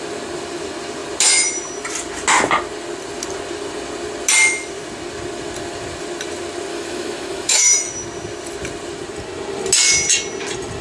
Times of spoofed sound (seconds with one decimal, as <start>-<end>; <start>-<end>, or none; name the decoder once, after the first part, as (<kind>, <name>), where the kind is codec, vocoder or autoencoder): 6.7-7.9 (autoencoder, DAC-VAE)